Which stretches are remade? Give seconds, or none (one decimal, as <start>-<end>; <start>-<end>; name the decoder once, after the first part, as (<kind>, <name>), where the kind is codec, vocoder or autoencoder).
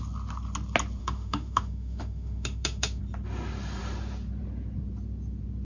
1.0-3.0 (autoencoder, DAC-VAE)